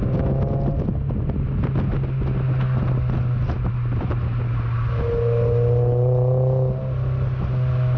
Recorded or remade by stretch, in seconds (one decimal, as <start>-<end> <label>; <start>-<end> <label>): 0.0-8.0 recorded